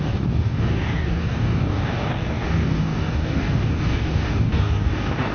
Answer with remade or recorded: remade